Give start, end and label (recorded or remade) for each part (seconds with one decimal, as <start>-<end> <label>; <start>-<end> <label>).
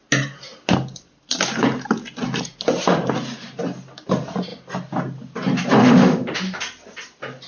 0.0-5.8 recorded; 5.8-6.6 remade; 6.6-7.5 recorded